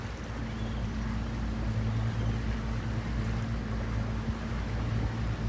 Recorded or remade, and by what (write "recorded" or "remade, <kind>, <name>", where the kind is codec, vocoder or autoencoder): recorded